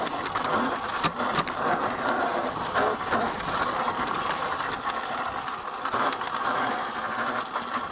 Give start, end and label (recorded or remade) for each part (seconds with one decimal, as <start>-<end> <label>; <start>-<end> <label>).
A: 0.0-7.9 recorded